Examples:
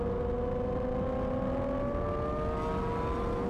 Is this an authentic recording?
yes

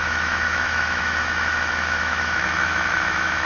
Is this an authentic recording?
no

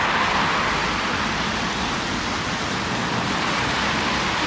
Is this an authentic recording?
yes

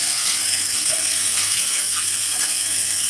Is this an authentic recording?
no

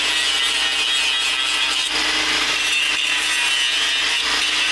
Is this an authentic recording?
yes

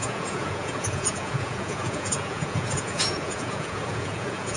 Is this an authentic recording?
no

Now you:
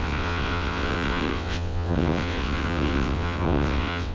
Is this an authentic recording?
no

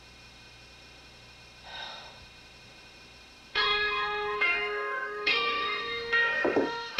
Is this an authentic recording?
no